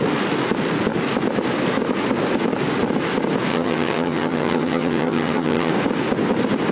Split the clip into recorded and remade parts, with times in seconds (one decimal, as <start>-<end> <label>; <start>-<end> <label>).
0.0-3.5 recorded; 3.5-5.7 remade; 5.7-6.7 recorded